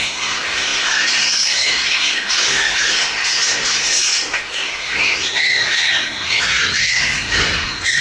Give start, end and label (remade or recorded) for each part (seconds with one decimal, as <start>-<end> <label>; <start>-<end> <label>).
0.0-8.0 remade

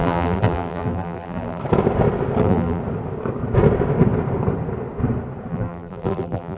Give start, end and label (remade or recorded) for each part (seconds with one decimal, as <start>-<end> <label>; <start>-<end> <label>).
0.0-1.6 remade; 1.6-2.4 recorded; 2.4-2.8 remade; 2.8-5.5 recorded; 5.5-6.6 remade

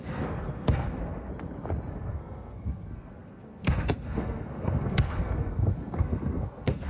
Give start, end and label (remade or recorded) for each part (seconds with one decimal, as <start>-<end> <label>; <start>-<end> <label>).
0.0-1.3 remade; 1.3-1.9 recorded; 1.9-6.9 remade

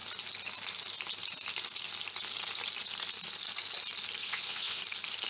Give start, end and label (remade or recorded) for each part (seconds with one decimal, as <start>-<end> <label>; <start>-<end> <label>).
0.0-4.2 recorded; 4.2-4.8 remade; 4.8-5.3 recorded

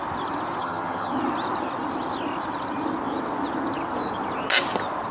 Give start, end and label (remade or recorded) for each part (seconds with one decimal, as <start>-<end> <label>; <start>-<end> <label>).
0.0-0.6 recorded; 0.6-1.1 remade; 1.1-5.1 recorded

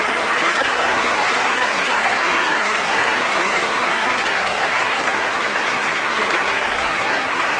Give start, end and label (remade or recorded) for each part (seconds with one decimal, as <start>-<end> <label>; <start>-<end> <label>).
0.0-7.6 remade